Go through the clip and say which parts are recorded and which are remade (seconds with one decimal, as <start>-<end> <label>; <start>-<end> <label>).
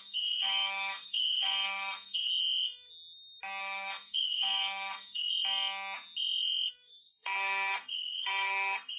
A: 0.0-2.3 remade; 2.3-3.6 recorded; 3.6-5.3 remade; 5.3-6.7 recorded; 6.7-9.0 remade